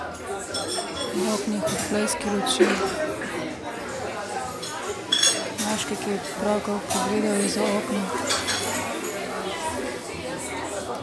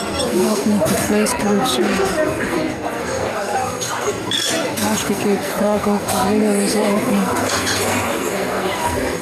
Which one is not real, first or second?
second